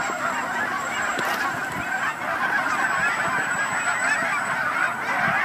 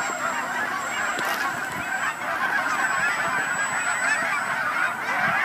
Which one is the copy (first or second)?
first